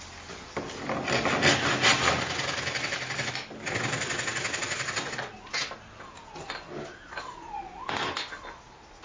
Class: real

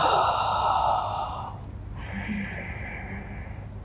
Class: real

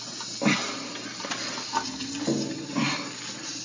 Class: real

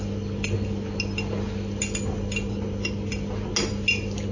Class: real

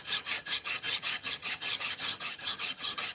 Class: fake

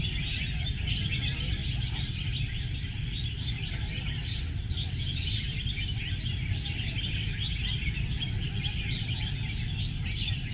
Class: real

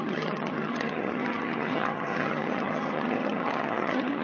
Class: fake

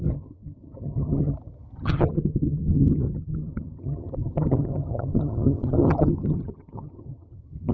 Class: fake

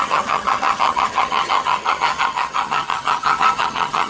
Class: fake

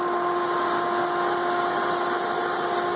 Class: real